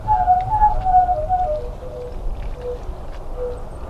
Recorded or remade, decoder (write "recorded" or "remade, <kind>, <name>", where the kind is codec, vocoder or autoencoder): recorded